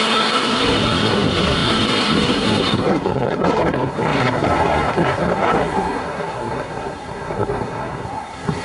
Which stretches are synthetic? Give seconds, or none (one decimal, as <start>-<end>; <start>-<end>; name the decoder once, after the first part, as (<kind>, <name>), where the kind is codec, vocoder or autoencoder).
0.0-8.6 (codec, SNAC)